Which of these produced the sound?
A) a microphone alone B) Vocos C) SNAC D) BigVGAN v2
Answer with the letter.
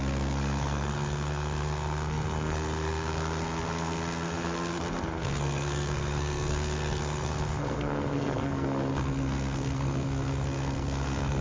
C